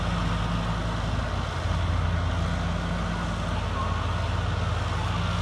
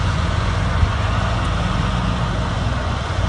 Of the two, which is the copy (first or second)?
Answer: second